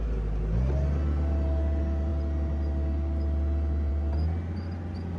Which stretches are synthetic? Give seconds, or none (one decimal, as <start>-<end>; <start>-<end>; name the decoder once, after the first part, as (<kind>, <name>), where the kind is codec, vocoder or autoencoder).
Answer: none